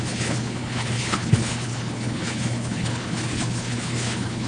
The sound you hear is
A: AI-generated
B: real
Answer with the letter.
A